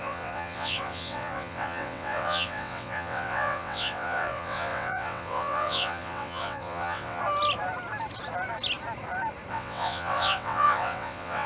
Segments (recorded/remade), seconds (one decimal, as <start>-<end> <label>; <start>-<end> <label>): 0.0-7.2 remade; 7.2-9.5 recorded; 9.5-11.5 remade